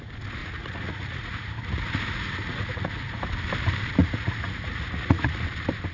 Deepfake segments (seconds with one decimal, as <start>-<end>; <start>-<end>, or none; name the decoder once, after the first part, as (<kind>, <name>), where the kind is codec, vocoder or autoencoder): 0.4-3.3 (vocoder, Vocos); 4.0-5.4